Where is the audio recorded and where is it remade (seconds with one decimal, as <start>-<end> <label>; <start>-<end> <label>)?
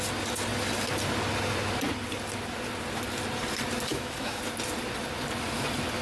0.0-3.9 recorded; 3.9-4.4 remade; 4.4-6.0 recorded